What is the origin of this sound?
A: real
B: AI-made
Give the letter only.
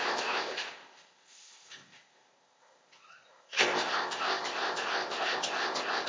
B